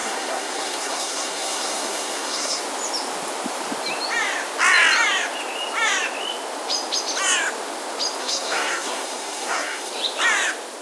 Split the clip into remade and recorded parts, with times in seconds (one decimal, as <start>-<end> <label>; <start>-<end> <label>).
0.0-2.6 remade; 2.6-8.2 recorded; 8.2-9.9 remade; 9.9-10.8 recorded